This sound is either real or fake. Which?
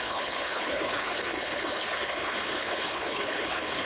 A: fake